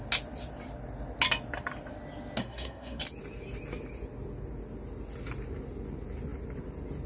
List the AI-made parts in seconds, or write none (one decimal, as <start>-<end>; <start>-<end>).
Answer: 2.4-3.0